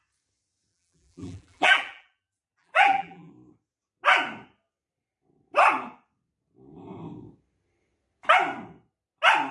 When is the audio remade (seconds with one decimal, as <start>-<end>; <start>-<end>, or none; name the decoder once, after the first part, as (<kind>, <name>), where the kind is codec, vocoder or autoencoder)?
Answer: 0.7-3.3 (vocoder, BigVGAN v2)